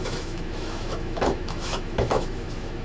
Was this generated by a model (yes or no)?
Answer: yes